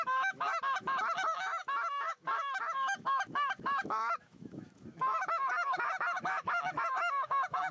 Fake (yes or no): yes